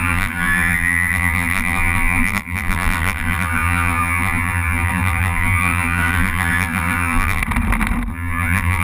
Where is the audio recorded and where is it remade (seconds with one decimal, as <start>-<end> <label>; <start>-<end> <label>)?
0.0-7.4 remade; 7.4-8.1 recorded; 8.1-8.8 remade